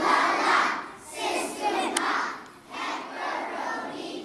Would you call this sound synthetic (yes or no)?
no